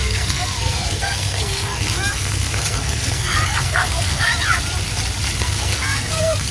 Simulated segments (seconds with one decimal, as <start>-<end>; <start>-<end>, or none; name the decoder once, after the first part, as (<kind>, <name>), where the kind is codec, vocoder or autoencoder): 0.0-4.3 (codec, SNAC); 5.4-6.5